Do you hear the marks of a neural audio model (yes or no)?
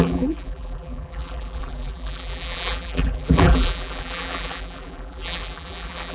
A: yes